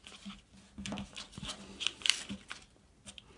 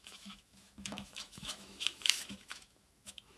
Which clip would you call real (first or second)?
first